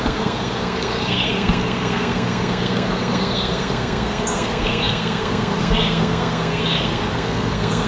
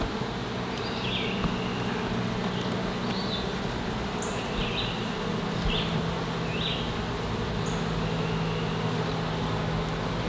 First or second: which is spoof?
first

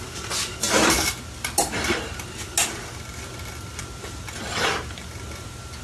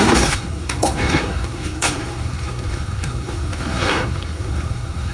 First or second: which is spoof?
second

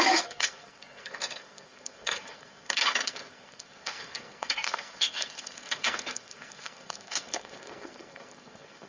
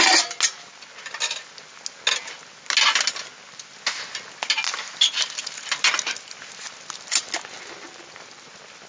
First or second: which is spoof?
first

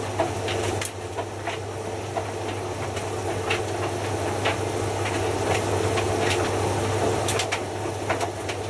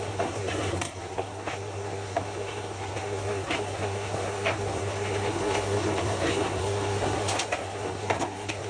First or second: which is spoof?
second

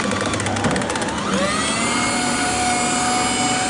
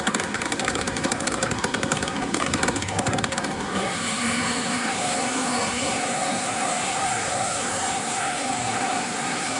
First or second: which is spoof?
second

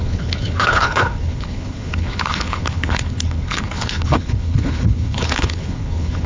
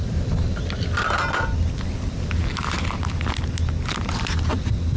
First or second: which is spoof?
first